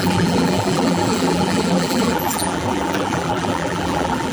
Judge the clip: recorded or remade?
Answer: remade